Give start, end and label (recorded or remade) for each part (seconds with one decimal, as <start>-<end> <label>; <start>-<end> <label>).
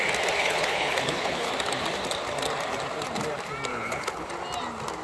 0.0-0.4 recorded; 0.4-1.5 remade; 1.5-3.7 recorded; 3.7-4.3 remade; 4.3-5.0 recorded